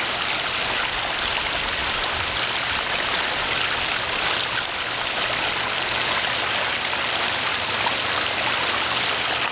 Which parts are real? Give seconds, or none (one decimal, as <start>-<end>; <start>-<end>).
0.0-7.5; 8.8-9.5